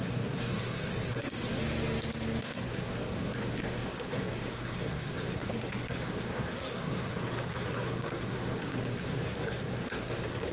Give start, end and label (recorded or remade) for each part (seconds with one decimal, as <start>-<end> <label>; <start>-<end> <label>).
0.0-1.6 remade; 1.6-2.4 recorded; 2.4-10.5 remade